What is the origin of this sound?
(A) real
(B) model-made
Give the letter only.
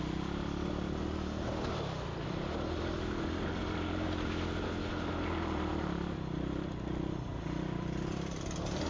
A